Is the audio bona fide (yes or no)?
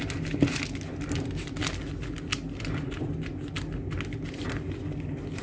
yes